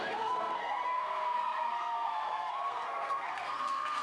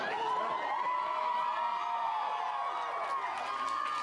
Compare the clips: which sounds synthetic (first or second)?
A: first